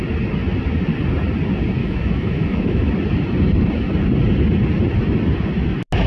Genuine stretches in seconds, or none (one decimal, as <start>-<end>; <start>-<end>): 0.0-1.8; 2.9-6.1